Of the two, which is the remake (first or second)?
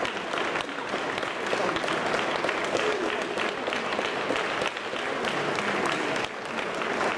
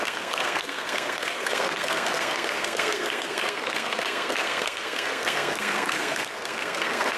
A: second